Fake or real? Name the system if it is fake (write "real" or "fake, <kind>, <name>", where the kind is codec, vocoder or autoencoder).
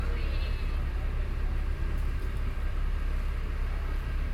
fake, vocoder, BigVGAN v2